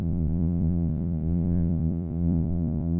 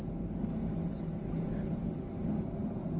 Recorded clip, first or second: second